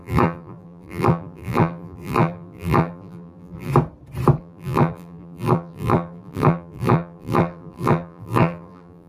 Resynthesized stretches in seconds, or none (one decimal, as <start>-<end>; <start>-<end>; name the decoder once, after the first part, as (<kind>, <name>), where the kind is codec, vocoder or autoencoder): 0.0-3.7 (vocoder, BigVGAN v2); 4.4-9.1